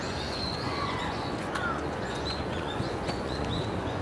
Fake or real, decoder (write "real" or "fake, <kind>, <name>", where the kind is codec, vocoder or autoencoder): fake, vocoder, Vocos